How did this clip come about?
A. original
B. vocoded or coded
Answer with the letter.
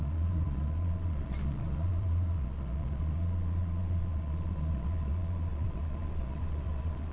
B